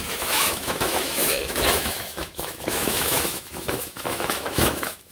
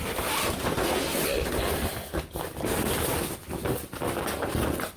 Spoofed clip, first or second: first